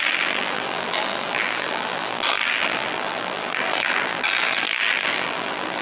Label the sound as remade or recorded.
remade